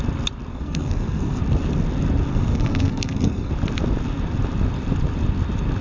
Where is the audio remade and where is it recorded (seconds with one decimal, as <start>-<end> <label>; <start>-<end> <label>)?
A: 0.0-0.5 recorded; 0.5-1.4 remade; 1.4-2.3 recorded; 2.3-3.5 remade; 3.5-5.8 recorded